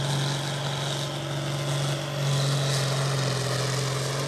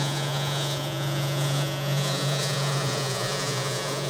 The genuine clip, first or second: first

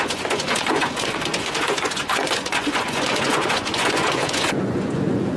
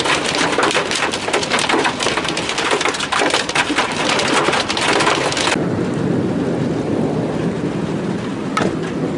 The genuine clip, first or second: second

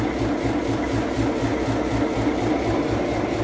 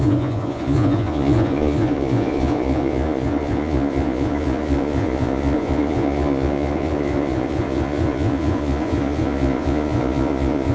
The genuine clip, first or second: first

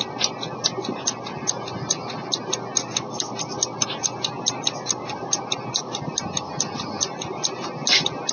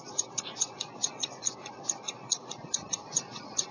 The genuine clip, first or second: first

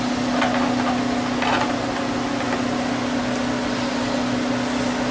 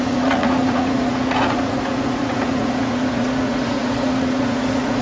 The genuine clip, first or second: first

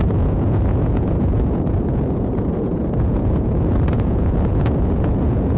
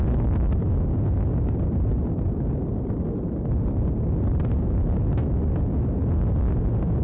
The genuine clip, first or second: second